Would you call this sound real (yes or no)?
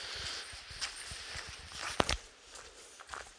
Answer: yes